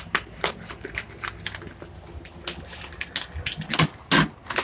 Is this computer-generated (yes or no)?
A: no